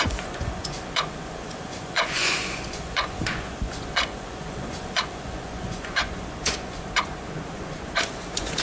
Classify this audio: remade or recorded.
remade